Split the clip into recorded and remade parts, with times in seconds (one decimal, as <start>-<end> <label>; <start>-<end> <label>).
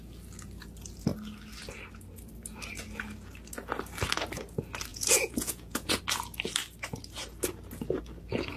0.0-4.9 recorded; 4.9-6.0 remade; 6.0-8.6 recorded